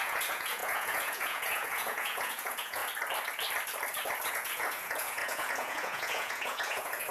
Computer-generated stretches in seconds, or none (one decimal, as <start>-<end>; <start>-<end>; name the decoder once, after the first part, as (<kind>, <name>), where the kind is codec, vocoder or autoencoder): 0.0-2.8 (vocoder, Vocos); 4.3-7.1